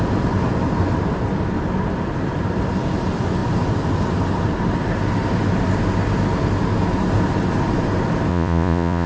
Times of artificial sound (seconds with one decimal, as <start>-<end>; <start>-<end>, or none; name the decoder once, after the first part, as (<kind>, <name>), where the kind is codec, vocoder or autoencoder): 8.3-9.1 (vocoder, Vocos)